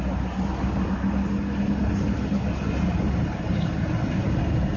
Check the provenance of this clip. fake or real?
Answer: real